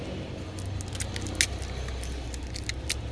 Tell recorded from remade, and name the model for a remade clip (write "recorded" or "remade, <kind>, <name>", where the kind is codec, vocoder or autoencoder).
recorded